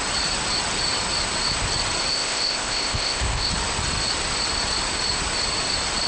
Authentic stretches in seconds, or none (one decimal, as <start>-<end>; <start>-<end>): 0.0-2.1; 3.5-6.1